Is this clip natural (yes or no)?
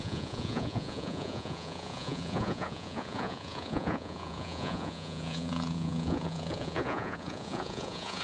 no